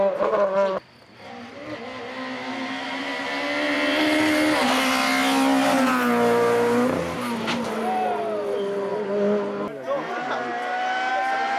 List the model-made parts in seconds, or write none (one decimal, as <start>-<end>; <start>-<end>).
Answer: none